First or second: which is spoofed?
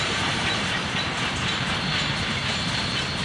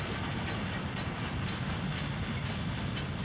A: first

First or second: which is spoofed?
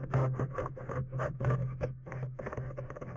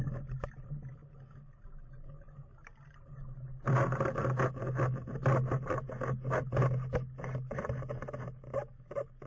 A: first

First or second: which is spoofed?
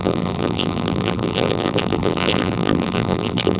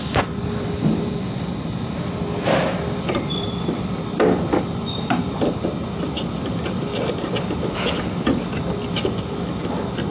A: first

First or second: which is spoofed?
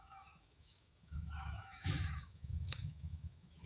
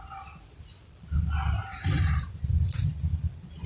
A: first